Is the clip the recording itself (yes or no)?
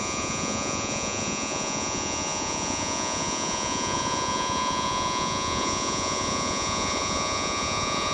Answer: no